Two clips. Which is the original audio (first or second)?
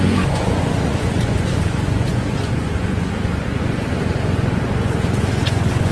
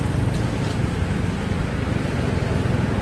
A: second